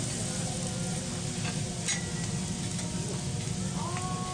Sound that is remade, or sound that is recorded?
recorded